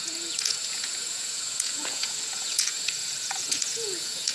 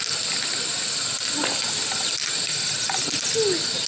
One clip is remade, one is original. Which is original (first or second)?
second